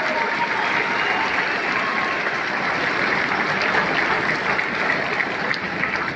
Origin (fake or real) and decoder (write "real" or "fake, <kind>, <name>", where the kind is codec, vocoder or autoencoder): fake, vocoder, BigVGAN v2